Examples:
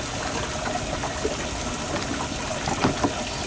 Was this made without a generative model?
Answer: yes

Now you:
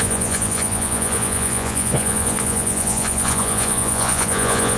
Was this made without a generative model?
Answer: no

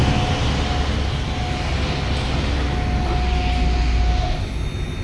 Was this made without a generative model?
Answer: yes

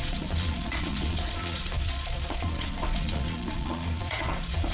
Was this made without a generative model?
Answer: no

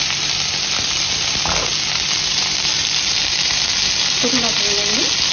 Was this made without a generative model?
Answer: yes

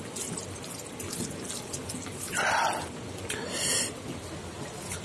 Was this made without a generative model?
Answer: yes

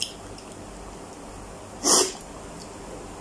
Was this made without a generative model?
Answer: yes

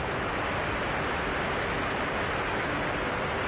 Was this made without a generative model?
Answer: yes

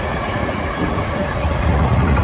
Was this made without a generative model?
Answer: no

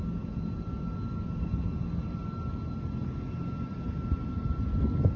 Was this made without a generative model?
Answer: yes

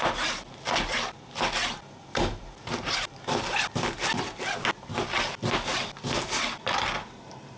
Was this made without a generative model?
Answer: yes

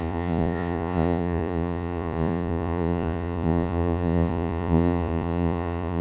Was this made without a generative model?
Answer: no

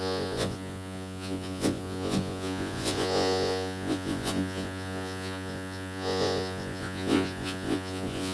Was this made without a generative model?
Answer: no